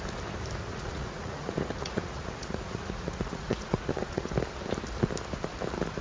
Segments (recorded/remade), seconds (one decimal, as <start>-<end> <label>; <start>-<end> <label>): 0.0-0.7 recorded; 0.7-4.3 remade; 4.3-6.0 recorded